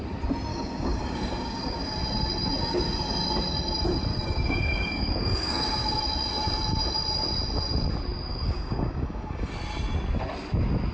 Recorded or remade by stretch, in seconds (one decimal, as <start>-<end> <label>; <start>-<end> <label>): 0.0-0.5 recorded; 0.5-2.0 remade; 2.0-4.1 recorded; 4.1-6.0 remade; 6.0-8.3 recorded; 8.3-9.5 remade; 9.5-10.9 recorded